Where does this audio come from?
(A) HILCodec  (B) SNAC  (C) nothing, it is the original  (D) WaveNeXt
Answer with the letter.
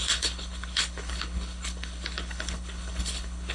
A